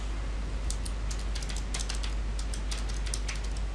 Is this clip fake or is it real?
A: real